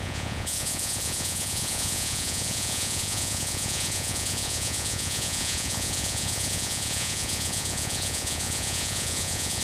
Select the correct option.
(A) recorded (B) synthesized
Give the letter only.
B